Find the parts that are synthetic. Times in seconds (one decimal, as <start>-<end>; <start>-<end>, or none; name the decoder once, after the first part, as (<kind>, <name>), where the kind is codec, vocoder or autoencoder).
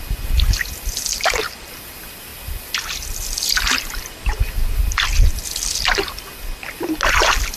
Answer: none